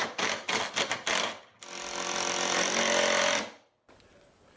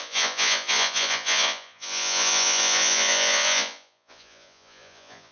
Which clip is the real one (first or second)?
first